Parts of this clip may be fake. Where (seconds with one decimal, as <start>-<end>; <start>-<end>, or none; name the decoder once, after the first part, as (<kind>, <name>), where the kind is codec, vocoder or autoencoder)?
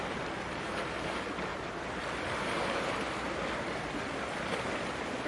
none